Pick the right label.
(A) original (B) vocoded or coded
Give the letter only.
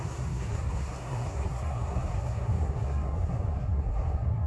B